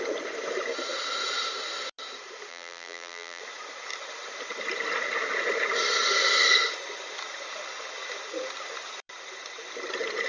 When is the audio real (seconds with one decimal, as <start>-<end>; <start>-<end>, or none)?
0.0-2.5; 3.4-10.3